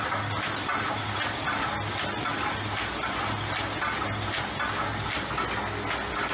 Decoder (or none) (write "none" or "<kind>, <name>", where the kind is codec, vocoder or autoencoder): none